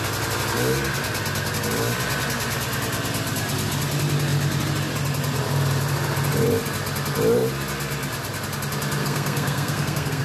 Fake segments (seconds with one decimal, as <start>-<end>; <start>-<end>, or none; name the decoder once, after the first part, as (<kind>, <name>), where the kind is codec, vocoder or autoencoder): 9.0-10.2 (codec, SNAC)

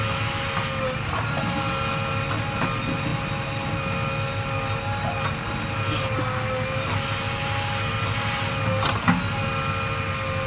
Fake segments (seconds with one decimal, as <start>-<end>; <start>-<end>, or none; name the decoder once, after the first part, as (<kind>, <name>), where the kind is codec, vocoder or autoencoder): none

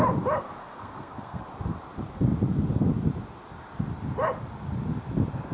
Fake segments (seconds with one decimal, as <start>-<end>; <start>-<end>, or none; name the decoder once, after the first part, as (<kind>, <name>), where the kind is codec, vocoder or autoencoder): 0.6-1.4 (codec, SNAC)

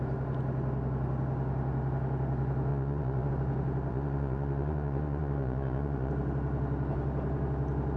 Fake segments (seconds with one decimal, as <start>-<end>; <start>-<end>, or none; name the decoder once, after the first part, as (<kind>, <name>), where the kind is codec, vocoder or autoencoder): 2.7-3.3 (vocoder, Vocos); 3.9-6.1

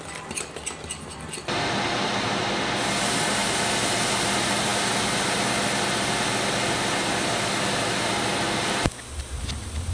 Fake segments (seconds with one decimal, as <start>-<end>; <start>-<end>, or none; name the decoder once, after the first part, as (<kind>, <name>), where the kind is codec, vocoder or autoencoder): none

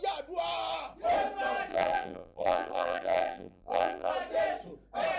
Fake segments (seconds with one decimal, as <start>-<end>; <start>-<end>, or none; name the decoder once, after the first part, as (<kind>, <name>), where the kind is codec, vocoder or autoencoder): 1.7-4.1 (vocoder, BigVGAN v2)